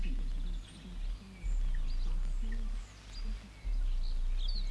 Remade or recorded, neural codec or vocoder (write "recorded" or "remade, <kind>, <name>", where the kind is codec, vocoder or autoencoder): recorded